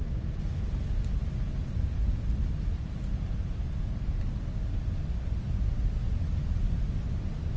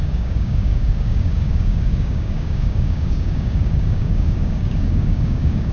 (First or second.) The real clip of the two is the first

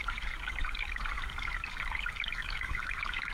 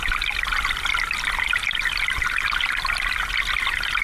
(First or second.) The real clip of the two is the second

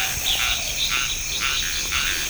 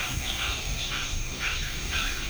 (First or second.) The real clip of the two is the first